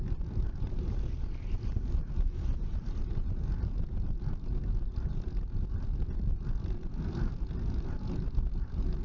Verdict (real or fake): real